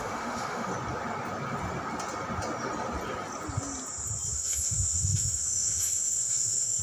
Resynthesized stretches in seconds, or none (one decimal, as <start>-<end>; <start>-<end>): 0.0-0.7; 4.3-6.8